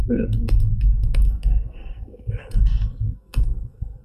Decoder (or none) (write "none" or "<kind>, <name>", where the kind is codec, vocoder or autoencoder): codec, SNAC